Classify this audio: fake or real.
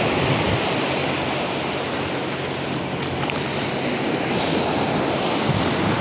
real